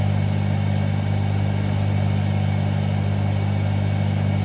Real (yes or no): yes